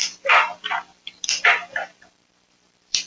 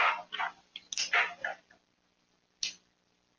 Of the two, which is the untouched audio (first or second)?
second